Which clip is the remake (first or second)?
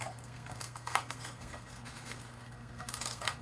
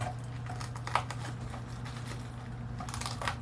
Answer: first